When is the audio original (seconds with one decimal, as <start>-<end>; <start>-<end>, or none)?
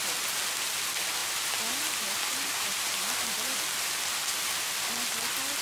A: 0.0-1.2; 3.6-5.6